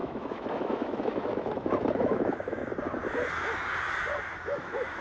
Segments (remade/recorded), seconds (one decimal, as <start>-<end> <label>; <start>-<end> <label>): 0.0-2.6 remade; 2.6-4.4 recorded; 4.4-5.0 remade